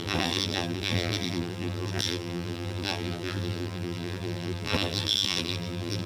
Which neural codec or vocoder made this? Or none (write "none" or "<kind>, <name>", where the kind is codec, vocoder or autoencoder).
vocoder, BigVGAN v2